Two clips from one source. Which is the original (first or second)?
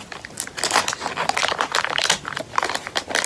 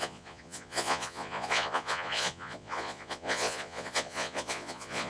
first